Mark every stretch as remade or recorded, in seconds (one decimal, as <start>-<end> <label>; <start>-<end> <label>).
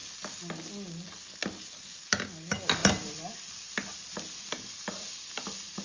0.0-5.8 recorded